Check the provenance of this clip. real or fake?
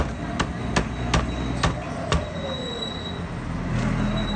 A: real